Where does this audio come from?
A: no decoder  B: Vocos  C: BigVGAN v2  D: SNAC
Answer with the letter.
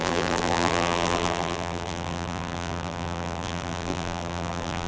C